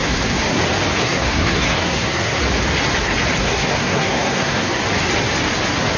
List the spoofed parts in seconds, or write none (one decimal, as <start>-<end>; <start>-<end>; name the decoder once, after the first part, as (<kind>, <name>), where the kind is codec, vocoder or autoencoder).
0.0-0.6 (codec, SNAC); 1.0-2.4; 3.4-4.8